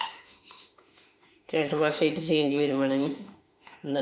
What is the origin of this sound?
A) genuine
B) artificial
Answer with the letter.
B